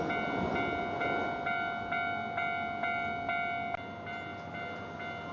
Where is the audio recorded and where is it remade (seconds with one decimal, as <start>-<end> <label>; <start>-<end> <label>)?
0.0-5.3 recorded